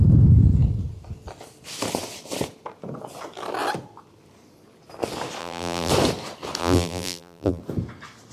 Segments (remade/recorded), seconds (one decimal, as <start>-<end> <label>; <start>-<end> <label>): 0.0-5.4 recorded; 5.4-5.9 remade; 5.9-6.6 recorded; 6.6-7.6 remade; 7.6-8.3 recorded